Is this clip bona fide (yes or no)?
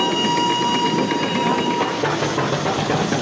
yes